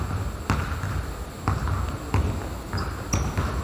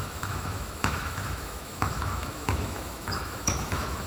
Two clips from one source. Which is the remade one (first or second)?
second